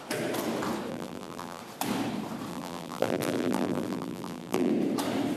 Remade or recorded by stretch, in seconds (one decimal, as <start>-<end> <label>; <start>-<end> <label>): 0.0-0.9 recorded; 0.9-1.6 remade; 1.6-2.5 recorded; 2.5-4.7 remade; 4.7-5.4 recorded